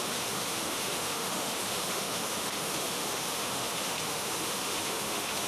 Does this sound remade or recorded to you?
remade